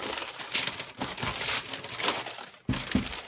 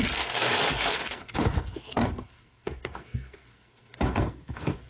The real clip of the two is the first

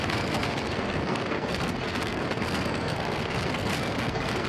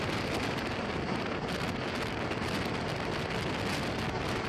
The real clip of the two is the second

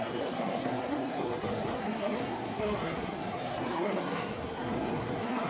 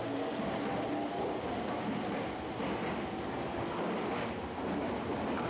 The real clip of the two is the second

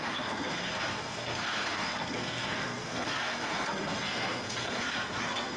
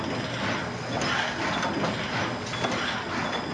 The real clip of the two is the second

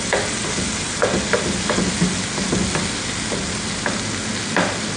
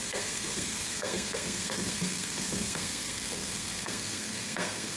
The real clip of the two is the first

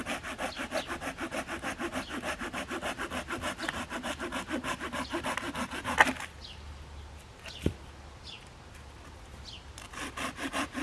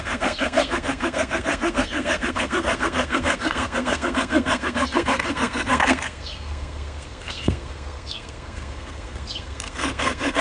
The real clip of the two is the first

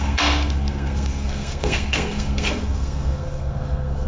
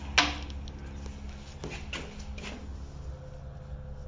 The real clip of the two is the second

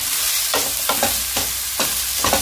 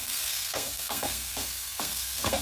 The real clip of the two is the first